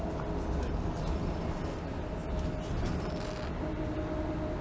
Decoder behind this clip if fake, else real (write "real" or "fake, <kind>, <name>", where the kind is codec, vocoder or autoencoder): real